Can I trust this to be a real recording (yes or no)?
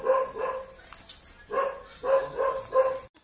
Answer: yes